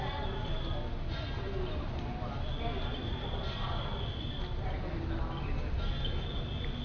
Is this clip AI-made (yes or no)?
no